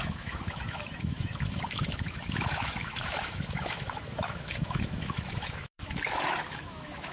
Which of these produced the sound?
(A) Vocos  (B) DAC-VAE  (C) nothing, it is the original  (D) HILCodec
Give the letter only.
B